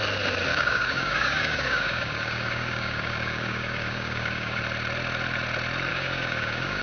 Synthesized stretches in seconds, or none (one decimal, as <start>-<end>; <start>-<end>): 0.5-4.6; 5.9-6.8